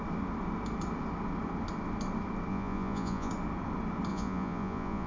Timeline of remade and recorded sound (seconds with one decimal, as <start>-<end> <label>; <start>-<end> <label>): 0.0-2.5 recorded; 2.5-3.3 remade; 3.3-4.1 recorded; 4.1-5.1 remade